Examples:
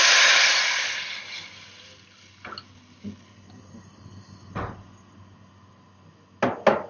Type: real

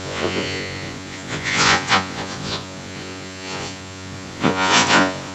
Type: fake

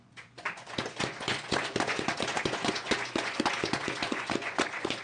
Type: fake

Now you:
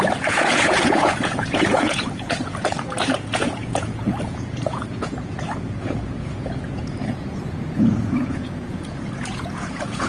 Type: fake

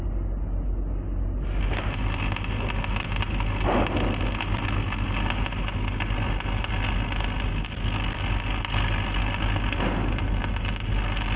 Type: real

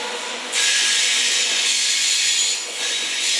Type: fake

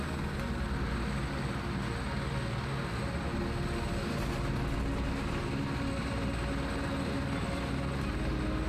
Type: real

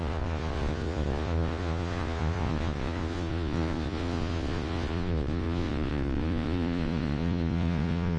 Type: fake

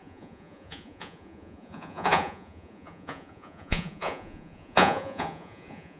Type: fake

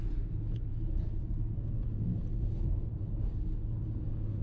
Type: fake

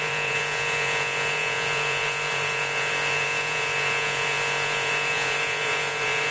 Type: fake